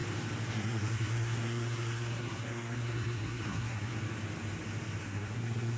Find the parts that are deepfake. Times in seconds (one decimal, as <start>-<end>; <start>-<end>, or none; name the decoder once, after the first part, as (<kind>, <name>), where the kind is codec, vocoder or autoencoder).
0.5-3.9 (codec, SNAC); 5.0-5.8